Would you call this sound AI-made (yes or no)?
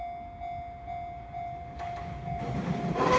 no